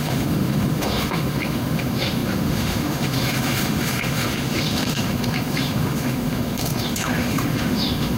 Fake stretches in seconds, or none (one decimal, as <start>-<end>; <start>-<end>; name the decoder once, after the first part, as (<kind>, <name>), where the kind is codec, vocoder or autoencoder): 0.0-8.2 (autoencoder, DAC-VAE)